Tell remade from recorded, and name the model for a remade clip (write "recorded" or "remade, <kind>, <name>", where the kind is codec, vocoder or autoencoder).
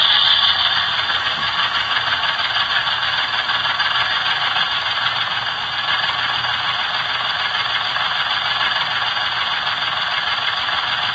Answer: recorded